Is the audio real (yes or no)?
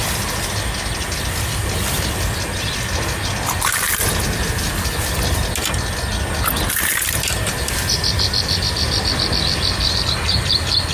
yes